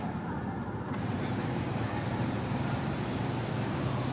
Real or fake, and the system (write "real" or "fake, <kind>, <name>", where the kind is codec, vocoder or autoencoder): real